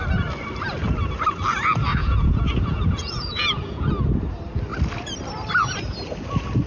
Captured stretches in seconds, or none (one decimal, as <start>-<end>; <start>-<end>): 0.0-2.0; 3.9-6.7